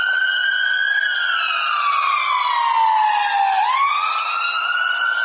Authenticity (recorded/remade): recorded